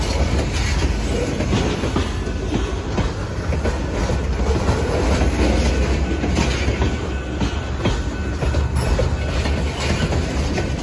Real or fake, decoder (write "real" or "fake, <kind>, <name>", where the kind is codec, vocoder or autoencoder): real